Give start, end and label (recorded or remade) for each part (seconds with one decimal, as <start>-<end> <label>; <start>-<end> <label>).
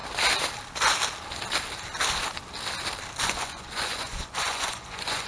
0.0-3.2 recorded; 3.2-5.3 remade